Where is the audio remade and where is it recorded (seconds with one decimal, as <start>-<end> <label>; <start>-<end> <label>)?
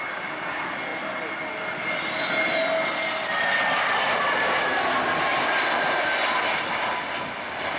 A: 0.0-5.3 recorded; 5.3-6.4 remade; 6.4-7.8 recorded